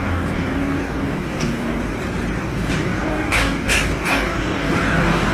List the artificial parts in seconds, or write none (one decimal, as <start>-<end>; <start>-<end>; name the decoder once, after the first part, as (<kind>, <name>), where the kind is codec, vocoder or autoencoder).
0.0-1.8 (codec, DAC); 2.4-5.3